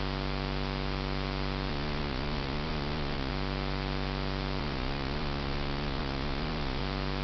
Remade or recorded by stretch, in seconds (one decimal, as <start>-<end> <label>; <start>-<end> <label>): 0.0-1.7 recorded; 1.7-3.3 remade; 3.3-4.6 recorded; 4.6-6.8 remade; 6.8-7.2 recorded